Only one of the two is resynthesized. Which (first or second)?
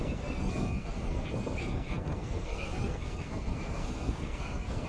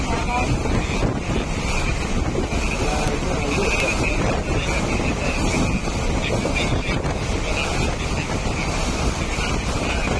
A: first